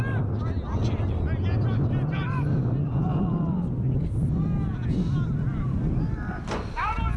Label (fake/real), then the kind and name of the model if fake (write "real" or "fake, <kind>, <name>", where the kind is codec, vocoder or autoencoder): real